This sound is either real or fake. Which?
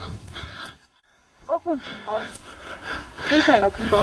fake